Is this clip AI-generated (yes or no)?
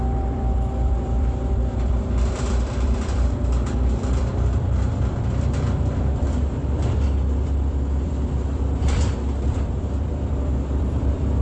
yes